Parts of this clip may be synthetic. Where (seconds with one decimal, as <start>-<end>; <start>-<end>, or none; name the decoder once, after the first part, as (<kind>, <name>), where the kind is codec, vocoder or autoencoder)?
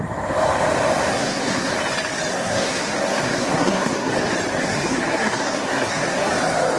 1.1-1.7 (codec, SNAC); 2.3-4.1; 4.6-6.3